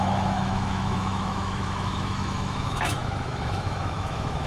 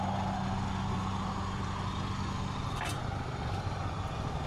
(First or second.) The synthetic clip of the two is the first